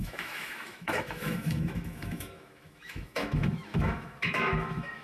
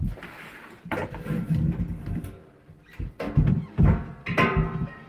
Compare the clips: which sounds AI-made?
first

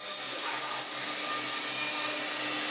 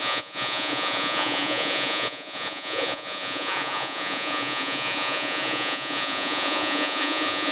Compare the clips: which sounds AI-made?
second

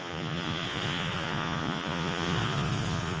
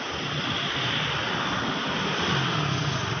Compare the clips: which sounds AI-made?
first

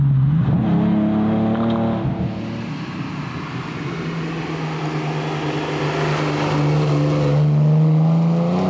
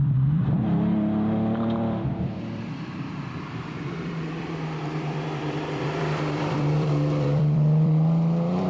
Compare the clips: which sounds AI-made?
second